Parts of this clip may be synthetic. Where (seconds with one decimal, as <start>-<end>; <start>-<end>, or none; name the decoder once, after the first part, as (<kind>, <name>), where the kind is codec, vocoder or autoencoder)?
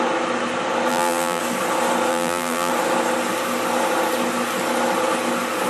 0.9-1.4 (vocoder, BigVGAN v2); 2.1-2.7